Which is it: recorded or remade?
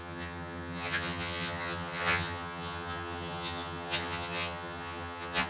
remade